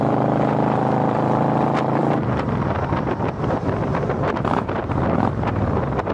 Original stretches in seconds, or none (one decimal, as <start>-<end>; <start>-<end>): none